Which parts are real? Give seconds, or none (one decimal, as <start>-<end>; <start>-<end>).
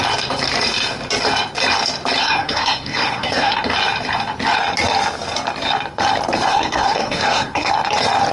0.0-2.2; 3.6-6.5; 7.7-8.3